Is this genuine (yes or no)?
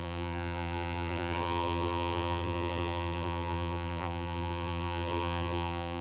no